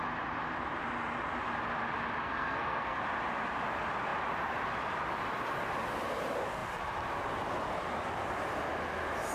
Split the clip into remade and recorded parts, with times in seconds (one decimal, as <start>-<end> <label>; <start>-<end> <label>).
0.0-2.2 recorded; 2.2-3.0 remade; 3.0-9.3 recorded